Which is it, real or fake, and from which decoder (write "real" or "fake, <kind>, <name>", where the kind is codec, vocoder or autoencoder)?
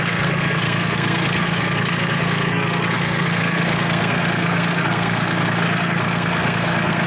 fake, codec, SNAC